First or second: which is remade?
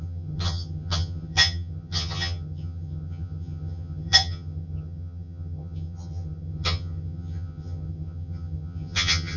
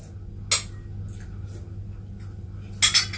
first